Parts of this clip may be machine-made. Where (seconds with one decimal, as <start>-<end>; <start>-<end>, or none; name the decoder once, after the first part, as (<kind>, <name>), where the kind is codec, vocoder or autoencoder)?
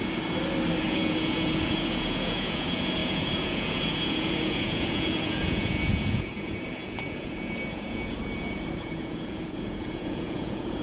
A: 0.8-10.8 (vocoder, Vocos)